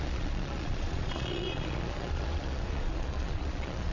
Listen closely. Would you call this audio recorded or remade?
remade